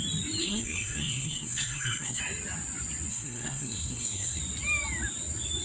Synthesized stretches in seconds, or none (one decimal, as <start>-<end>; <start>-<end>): 0.4-2.2; 3.1-4.4